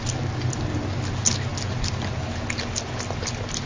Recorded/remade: recorded